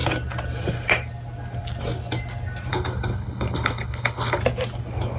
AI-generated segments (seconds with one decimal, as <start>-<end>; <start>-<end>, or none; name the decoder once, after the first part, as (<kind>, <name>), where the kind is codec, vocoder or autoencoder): 2.7-4.4 (codec, HILCodec)